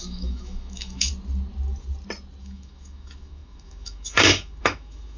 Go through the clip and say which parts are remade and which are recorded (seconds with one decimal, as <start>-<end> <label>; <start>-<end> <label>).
0.0-1.1 remade; 1.1-2.4 recorded; 2.4-5.2 remade